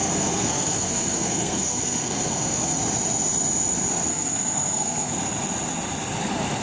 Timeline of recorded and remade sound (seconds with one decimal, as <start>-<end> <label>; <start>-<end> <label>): 0.0-2.8 remade; 2.8-4.1 recorded; 4.1-5.1 remade; 5.1-6.6 recorded